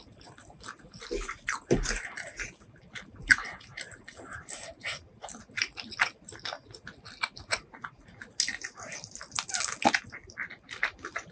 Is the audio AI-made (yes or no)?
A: no